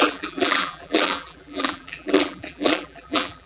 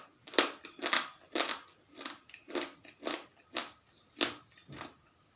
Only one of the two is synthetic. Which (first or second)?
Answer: first